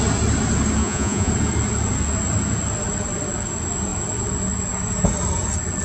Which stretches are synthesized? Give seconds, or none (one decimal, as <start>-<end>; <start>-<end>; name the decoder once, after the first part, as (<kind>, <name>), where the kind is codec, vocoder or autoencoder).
0.8-1.3 (vocoder, Vocos)